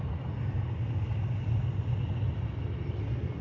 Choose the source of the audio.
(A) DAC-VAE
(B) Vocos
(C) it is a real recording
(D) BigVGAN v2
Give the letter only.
C